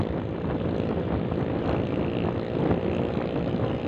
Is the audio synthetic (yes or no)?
no